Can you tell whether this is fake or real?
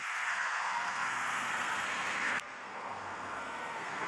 fake